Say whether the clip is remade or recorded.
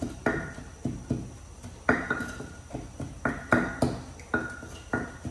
recorded